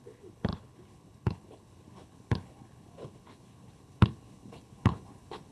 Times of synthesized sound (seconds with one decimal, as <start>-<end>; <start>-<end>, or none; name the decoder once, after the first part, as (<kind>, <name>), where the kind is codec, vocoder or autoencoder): 0.0-5.5 (codec, HILCodec)